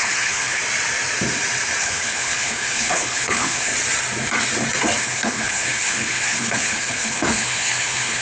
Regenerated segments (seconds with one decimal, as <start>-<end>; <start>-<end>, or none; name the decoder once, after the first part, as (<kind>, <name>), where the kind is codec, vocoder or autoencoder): 0.0-0.6 (codec, HILCodec); 1.8-3.7; 5.0-8.2